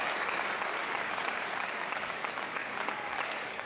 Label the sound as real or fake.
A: fake